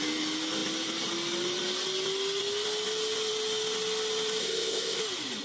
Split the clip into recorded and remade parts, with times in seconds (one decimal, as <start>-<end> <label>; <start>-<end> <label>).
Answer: 0.0-4.4 recorded; 4.4-5.0 remade; 5.0-5.4 recorded